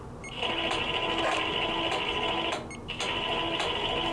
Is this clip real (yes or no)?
yes